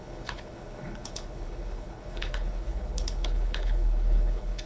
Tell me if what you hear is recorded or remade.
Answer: remade